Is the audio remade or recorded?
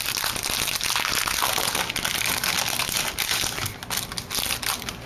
recorded